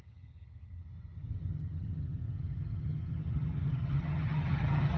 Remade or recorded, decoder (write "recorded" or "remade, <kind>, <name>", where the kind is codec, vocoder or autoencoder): remade, vocoder, HiFi-GAN